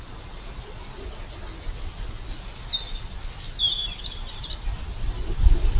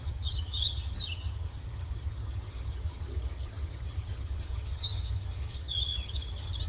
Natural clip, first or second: first